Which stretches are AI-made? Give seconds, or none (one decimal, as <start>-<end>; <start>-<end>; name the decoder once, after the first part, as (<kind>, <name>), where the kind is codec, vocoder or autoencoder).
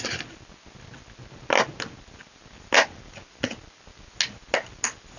none